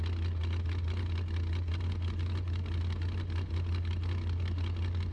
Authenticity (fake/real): real